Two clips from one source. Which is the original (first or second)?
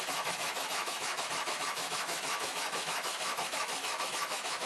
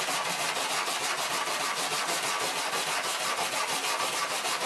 second